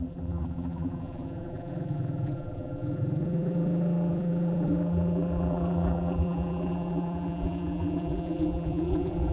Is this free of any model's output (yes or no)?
no